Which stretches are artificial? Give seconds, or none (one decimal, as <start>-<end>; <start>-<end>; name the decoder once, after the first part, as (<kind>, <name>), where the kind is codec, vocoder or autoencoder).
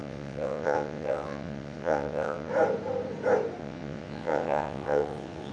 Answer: 0.0-2.5 (vocoder, WaveNeXt); 3.6-5.5